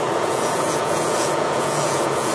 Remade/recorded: remade